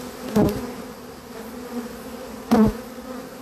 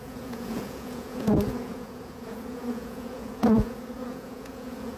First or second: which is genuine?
first